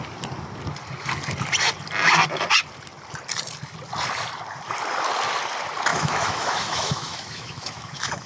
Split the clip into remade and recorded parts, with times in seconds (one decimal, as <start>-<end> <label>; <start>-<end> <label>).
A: 0.0-5.9 recorded; 5.9-8.3 remade